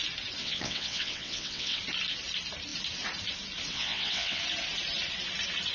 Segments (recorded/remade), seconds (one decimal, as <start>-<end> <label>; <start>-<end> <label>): 0.0-0.4 recorded; 0.4-1.8 remade; 1.8-3.7 recorded; 3.7-4.4 remade; 4.4-5.7 recorded